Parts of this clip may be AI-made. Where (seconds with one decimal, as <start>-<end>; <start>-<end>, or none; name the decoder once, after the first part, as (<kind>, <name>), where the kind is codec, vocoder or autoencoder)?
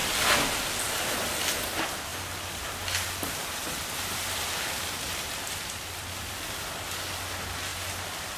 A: 0.0-0.7 (vocoder, BigVGAN v2); 2.1-6.9; 7.7-8.4